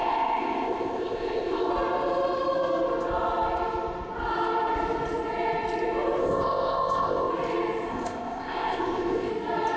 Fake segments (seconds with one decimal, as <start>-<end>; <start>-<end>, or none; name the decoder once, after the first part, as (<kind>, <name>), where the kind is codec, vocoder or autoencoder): 0.0-1.7 (codec, ZipCodec); 6.2-7.3; 7.9-9.3